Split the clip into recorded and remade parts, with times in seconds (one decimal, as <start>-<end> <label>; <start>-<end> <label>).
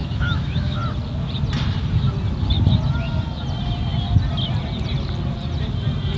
0.0-0.8 remade; 0.8-6.2 recorded